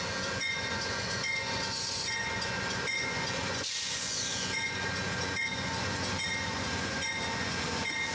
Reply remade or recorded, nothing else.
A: remade